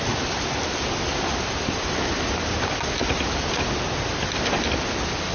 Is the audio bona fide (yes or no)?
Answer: yes